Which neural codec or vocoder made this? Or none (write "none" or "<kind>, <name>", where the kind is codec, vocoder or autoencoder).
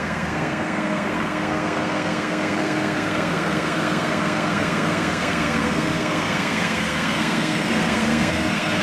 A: codec, SNAC